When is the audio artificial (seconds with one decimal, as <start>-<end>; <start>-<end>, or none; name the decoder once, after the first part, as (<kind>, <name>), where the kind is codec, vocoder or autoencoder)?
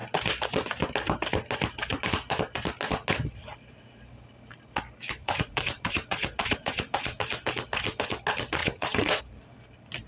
5.2-7.2 (vocoder, Vocos); 8.6-9.2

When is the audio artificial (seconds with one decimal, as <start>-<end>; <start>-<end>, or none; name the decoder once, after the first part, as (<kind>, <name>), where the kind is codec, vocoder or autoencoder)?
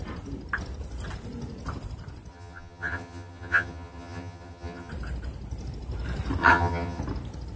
2.3-4.9 (vocoder, HiFi-GAN); 6.4-7.0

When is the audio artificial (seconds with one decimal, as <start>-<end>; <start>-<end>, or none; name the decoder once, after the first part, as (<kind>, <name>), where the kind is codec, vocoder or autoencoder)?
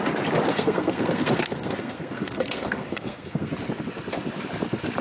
0.5-3.5 (codec, SNAC)